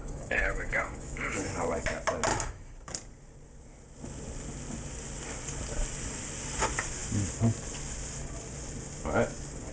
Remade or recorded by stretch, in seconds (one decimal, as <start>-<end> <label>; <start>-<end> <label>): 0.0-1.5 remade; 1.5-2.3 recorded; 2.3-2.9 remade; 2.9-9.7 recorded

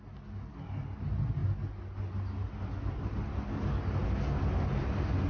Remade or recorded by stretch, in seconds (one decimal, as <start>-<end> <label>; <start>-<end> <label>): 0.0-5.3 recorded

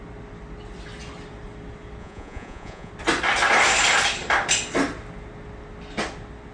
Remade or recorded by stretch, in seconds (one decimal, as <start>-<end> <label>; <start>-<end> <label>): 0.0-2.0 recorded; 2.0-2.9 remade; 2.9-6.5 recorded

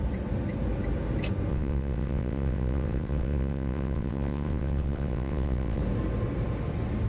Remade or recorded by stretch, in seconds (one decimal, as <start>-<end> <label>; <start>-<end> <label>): 0.0-1.5 recorded; 1.5-5.8 remade; 5.8-7.1 recorded

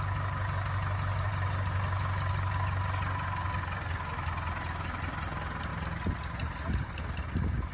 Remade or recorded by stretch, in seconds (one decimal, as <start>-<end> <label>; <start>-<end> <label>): 0.0-7.7 recorded